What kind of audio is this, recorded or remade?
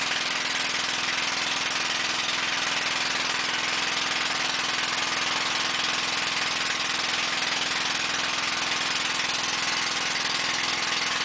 recorded